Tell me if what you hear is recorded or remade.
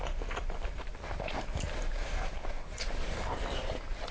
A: remade